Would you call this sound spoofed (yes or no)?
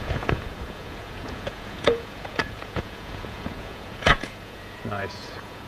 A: yes